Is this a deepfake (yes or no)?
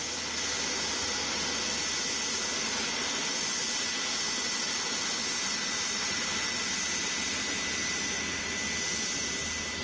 no